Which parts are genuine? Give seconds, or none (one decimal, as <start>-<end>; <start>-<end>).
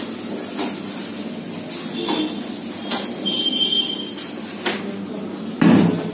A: 0.0-6.1